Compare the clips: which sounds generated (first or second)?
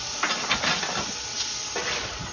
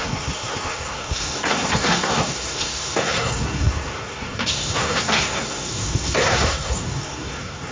second